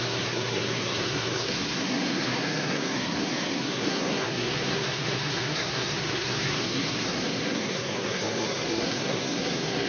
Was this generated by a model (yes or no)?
yes